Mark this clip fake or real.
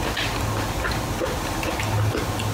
real